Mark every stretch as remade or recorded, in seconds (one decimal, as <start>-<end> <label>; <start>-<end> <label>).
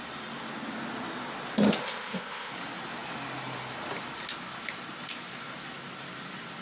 0.0-1.8 recorded; 1.8-2.5 remade; 2.5-6.6 recorded